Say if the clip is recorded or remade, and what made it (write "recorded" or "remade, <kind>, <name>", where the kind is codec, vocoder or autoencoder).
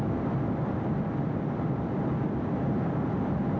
recorded